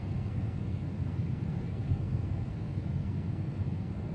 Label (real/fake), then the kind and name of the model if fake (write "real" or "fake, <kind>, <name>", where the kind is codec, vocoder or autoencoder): fake, codec, SNAC